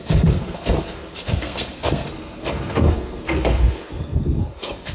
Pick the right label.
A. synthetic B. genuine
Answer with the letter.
A